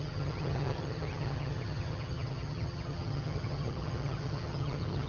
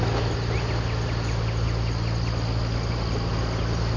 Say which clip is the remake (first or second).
first